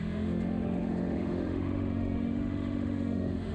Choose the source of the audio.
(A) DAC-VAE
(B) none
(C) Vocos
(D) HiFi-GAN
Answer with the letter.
A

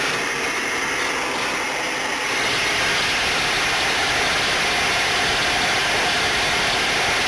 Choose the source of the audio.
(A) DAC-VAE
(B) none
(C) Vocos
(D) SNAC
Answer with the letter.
B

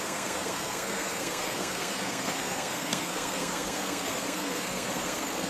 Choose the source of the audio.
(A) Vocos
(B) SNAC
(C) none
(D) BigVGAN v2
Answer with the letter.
B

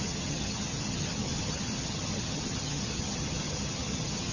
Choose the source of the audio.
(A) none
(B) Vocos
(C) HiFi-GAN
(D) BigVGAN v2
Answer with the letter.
C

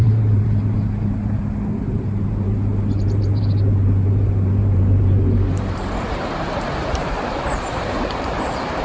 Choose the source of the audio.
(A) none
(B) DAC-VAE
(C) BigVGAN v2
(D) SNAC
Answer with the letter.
C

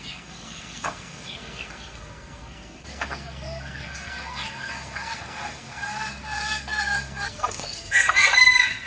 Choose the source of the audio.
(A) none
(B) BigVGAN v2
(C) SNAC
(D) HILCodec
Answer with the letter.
C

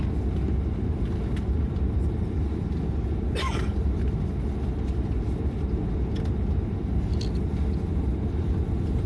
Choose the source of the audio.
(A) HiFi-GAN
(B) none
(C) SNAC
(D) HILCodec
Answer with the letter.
B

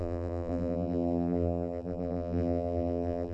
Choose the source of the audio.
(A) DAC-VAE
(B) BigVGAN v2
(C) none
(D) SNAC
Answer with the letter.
B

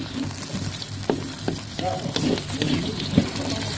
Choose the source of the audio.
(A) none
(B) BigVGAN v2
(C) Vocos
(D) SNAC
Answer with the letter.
A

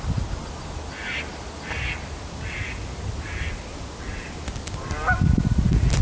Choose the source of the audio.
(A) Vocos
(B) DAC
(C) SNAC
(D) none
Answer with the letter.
D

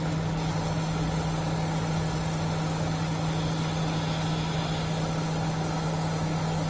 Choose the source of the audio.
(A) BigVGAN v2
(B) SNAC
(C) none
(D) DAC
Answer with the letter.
C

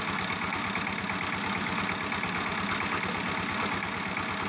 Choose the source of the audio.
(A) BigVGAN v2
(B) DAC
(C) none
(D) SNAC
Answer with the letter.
C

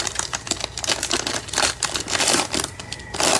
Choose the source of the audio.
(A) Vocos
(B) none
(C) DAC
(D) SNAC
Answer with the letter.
B